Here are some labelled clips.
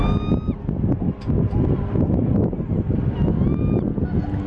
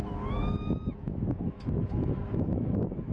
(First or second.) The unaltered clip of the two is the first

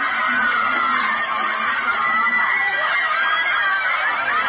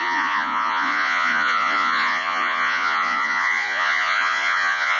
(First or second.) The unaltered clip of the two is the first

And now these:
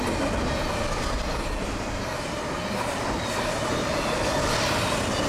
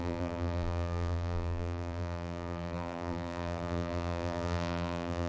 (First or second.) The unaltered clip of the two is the first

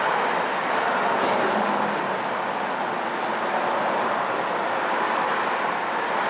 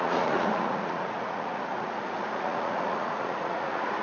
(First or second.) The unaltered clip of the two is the first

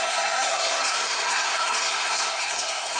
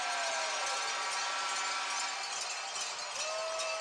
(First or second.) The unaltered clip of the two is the second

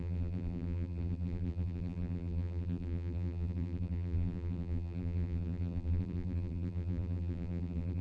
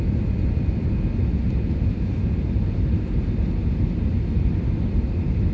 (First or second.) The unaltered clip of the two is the second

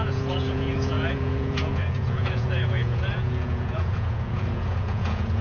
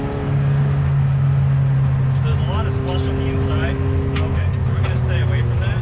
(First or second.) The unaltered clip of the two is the second